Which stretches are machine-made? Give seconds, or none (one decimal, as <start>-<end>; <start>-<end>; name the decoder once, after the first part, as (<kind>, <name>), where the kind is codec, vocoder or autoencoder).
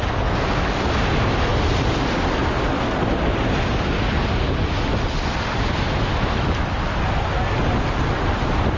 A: none